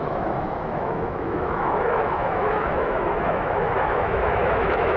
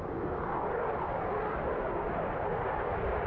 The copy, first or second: first